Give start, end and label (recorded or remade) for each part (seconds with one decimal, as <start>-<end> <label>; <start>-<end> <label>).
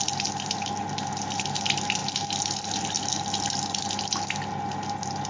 0.0-5.3 recorded